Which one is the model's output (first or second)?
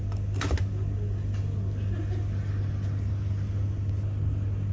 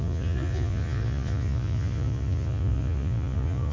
second